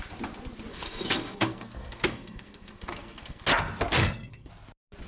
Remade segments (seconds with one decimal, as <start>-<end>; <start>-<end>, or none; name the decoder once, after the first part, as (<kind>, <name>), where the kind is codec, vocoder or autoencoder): 0.7-3.4 (codec, SNAC); 4.0-4.5